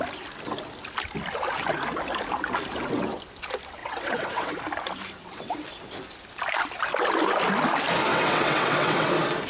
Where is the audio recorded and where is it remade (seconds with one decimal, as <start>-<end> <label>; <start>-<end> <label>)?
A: 0.0-3.8 recorded; 3.8-4.6 remade; 4.6-5.2 recorded; 5.2-5.7 remade; 5.7-8.1 recorded; 8.1-9.1 remade; 9.1-9.5 recorded